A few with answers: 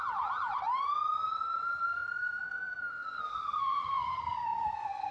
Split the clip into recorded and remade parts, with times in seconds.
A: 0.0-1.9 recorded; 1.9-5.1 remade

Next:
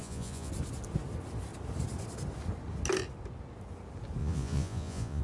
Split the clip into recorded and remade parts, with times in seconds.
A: 0.0-0.5 remade; 0.5-4.2 recorded; 4.2-5.2 remade